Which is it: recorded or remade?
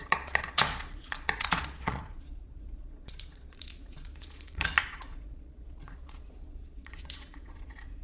remade